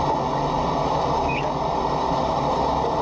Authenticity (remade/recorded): recorded